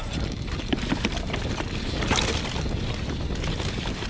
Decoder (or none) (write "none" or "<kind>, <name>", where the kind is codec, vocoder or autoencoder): none